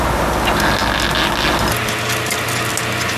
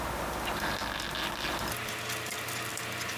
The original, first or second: first